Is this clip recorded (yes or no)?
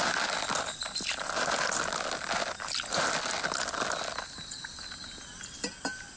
yes